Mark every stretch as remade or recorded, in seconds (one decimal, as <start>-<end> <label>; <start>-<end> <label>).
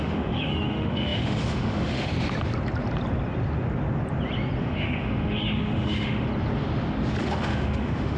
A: 0.0-2.1 remade; 2.1-4.6 recorded; 4.6-6.3 remade; 6.3-7.2 recorded; 7.2-8.2 remade